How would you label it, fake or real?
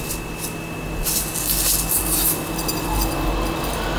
real